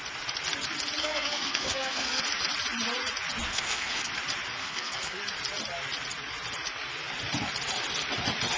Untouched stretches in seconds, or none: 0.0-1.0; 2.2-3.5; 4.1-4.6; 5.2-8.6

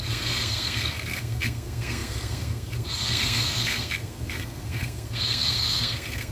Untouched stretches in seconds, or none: none

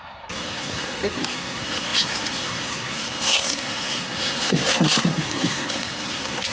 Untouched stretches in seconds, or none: none

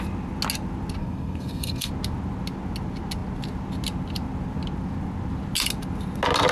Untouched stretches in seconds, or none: 0.0-1.0; 1.9-6.5

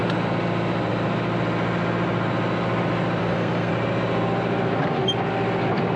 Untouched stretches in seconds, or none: 0.0-3.2; 3.7-6.0

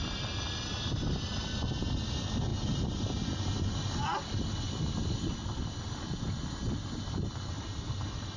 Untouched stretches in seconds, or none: 0.0-8.4

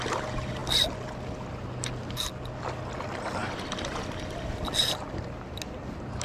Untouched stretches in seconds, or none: 0.0-6.2